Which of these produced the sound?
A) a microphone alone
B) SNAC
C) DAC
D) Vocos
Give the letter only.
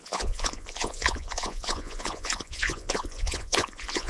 D